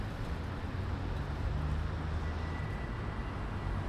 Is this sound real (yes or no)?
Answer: yes